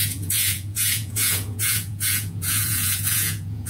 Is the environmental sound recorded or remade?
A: remade